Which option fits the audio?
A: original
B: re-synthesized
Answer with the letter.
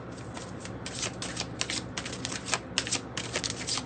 A